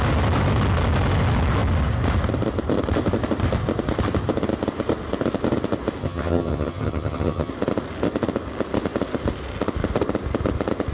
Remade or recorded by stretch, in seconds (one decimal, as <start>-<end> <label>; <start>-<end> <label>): 0.0-6.0 recorded; 6.0-7.5 remade; 7.5-10.9 recorded